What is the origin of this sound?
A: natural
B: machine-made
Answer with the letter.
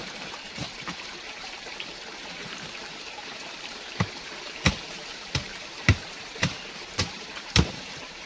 B